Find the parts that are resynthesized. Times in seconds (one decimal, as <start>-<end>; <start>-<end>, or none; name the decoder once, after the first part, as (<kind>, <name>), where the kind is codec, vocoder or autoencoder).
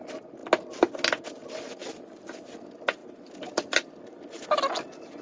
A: 1.8-2.5 (vocoder, BigVGAN v2); 3.0-4.0